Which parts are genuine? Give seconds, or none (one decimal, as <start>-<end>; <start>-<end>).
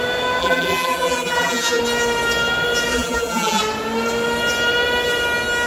0.0-0.4; 1.8-2.9; 3.6-5.7